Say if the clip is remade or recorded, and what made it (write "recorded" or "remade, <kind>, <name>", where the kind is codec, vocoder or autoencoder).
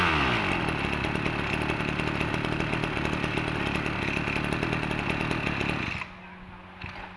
recorded